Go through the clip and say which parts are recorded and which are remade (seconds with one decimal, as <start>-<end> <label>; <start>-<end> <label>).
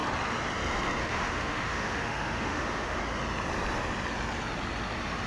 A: 0.0-1.0 recorded; 1.0-3.0 remade; 3.0-5.3 recorded